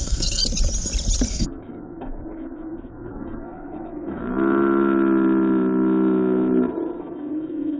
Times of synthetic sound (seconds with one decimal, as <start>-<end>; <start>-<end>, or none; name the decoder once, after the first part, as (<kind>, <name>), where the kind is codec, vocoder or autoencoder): 0.0-0.4 (codec, SNAC); 1.3-4.2; 7.0-7.8